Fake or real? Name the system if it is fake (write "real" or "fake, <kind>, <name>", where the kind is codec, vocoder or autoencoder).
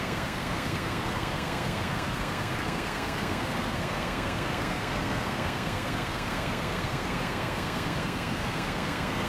fake, codec, SNAC